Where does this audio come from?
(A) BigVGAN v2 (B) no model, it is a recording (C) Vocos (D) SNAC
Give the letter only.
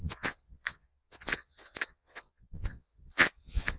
C